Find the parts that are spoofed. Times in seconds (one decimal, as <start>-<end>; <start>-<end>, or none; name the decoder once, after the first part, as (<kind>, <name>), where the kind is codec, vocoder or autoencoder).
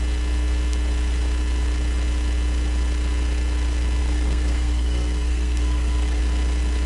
4.0-6.2 (codec, SNAC)